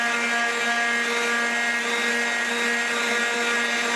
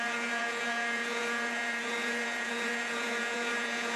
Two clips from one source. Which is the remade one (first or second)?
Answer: second